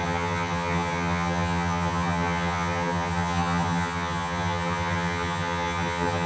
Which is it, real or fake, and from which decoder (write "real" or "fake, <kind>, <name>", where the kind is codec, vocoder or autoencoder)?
fake, vocoder, HiFi-GAN